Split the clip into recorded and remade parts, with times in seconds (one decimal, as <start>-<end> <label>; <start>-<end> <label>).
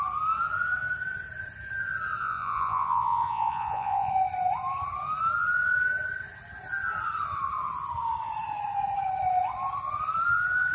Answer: 0.0-2.2 recorded; 2.2-4.1 remade; 4.1-10.7 recorded